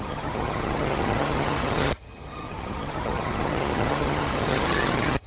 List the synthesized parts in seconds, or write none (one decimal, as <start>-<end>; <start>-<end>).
0.0-5.3